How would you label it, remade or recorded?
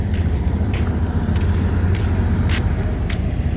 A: remade